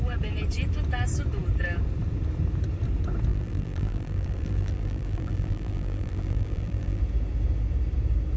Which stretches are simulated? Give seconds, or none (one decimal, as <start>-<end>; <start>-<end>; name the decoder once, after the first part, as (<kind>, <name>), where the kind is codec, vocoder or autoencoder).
3.3-7.0 (vocoder, BigVGAN v2)